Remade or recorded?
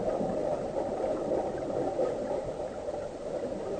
recorded